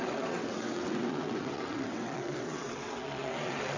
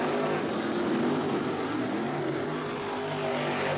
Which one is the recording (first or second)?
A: second